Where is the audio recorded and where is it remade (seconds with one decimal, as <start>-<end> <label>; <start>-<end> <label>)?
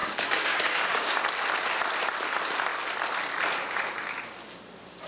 0.0-1.2 remade; 1.2-5.1 recorded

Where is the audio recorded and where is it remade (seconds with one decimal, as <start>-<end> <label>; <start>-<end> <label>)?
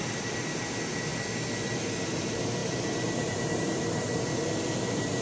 0.0-2.6 recorded; 2.6-4.3 remade; 4.3-5.2 recorded